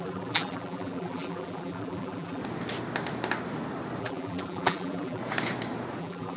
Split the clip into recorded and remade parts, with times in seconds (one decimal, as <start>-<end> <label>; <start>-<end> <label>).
0.0-2.4 remade; 2.4-4.0 recorded; 4.0-5.2 remade; 5.2-6.0 recorded; 6.0-6.4 remade

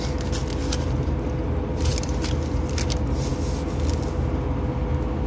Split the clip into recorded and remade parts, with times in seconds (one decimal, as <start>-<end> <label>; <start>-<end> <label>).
0.0-5.3 recorded

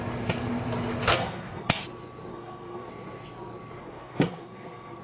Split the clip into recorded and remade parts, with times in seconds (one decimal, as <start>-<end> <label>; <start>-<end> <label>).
0.0-1.1 recorded; 1.1-1.8 remade; 1.8-2.3 recorded; 2.3-2.9 remade; 2.9-3.8 recorded; 3.8-5.0 remade

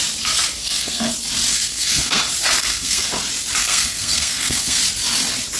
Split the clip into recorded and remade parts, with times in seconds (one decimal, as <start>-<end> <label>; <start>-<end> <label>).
0.0-0.6 recorded; 0.6-1.1 remade; 1.1-1.5 recorded; 1.5-2.2 remade; 2.2-2.6 recorded; 2.6-3.1 remade; 3.1-3.6 recorded; 3.6-4.8 remade; 4.8-5.6 recorded

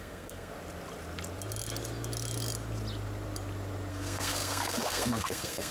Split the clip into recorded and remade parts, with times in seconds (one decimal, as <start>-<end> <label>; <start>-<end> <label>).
0.0-0.5 remade; 0.5-3.9 recorded; 3.9-5.7 remade

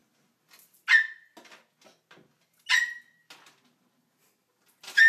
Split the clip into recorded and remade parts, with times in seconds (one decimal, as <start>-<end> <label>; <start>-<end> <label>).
0.0-5.1 recorded

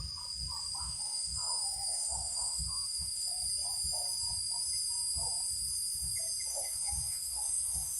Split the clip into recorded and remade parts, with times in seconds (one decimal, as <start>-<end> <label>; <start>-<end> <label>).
0.0-0.8 recorded; 0.8-3.3 remade; 3.3-6.5 recorded; 6.5-8.0 remade